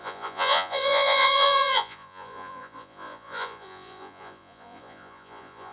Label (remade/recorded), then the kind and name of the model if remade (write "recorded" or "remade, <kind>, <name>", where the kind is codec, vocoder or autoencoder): remade, vocoder, Vocos